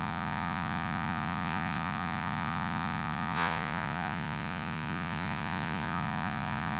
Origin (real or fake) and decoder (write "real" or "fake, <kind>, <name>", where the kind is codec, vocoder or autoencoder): fake, vocoder, Vocos